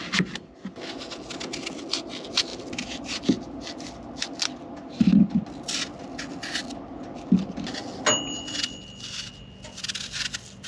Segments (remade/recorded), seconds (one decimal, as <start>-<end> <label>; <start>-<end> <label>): 0.0-10.7 recorded